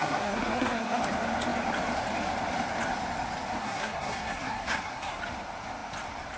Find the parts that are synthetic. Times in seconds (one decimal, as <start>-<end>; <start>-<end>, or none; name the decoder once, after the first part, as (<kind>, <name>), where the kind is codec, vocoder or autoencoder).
0.0-1.0 (codec, SNAC); 3.6-5.2

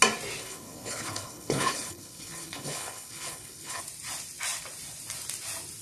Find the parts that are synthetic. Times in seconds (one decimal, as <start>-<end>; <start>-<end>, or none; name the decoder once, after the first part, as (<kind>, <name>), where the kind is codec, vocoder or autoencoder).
0.4-3.8 (codec, HILCodec)

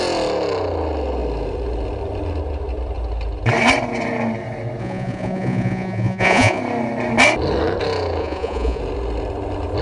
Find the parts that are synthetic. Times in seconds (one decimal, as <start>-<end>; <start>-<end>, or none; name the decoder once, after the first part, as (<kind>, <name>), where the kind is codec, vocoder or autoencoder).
4.8-6.6 (vocoder, Vocos); 8.2-8.8

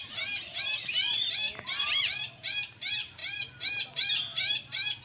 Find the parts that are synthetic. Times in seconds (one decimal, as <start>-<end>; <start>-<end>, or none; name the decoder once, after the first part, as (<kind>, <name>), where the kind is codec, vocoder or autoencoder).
0.0-3.2 (vocoder, BigVGAN v2); 3.9-5.0

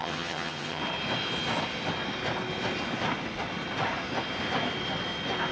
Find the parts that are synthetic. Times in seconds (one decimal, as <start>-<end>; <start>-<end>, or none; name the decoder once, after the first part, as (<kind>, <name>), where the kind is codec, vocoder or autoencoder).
0.0-0.8 (vocoder, HiFi-GAN)

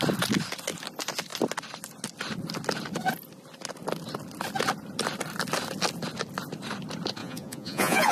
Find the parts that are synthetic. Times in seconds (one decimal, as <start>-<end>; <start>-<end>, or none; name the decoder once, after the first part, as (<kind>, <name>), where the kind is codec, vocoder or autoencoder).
7.2-8.1 (vocoder, Vocos)

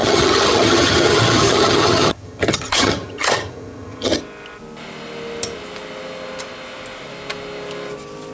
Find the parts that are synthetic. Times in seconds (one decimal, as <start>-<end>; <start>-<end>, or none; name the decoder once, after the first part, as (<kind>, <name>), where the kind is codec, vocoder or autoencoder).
0.0-4.2 (vocoder, HiFi-GAN)